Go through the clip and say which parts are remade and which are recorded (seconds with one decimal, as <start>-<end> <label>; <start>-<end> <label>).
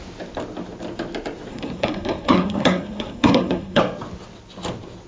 0.0-1.5 recorded; 1.5-3.8 remade; 3.8-5.1 recorded